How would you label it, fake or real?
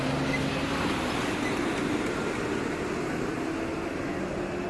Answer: real